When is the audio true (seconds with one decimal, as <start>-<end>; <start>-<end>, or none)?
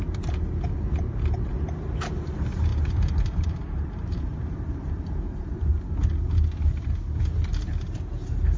0.0-2.7; 5.8-8.6